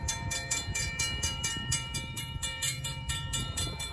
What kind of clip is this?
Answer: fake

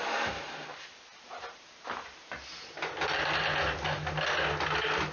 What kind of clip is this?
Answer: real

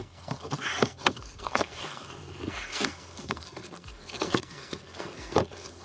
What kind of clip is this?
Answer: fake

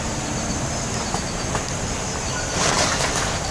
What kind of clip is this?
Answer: fake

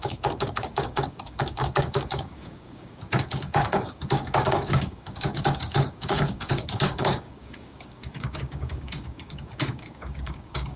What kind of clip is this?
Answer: fake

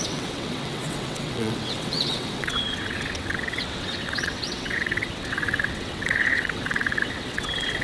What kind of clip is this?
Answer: fake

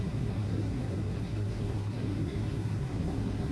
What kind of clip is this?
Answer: fake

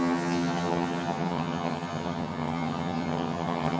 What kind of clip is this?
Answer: fake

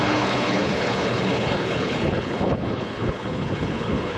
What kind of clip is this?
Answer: fake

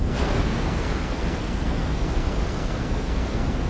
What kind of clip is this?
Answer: fake